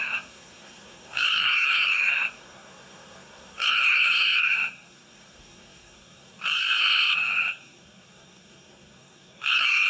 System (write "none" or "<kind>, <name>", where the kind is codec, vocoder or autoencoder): codec, SNAC